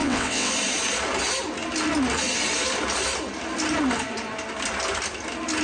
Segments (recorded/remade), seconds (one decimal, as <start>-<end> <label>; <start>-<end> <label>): 0.0-0.5 remade; 0.5-5.6 recorded